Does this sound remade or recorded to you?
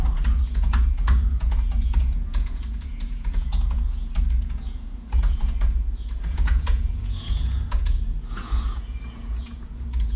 remade